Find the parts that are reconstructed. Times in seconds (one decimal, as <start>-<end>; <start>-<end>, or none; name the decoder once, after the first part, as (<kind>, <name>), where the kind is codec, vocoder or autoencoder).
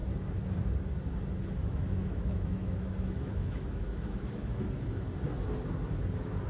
1.6-4.7 (autoencoder, DAC-VAE)